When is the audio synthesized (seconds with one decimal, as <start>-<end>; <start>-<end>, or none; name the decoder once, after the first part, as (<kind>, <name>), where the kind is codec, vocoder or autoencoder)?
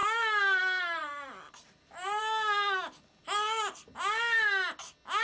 1.0-2.2 (vocoder, BigVGAN v2)